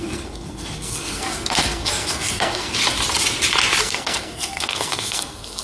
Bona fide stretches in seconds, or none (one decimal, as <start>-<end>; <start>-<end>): 2.8-3.8